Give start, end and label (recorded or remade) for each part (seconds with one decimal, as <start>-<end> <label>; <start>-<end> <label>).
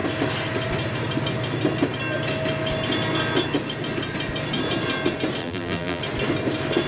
0.0-5.4 recorded; 5.4-6.0 remade; 6.0-6.9 recorded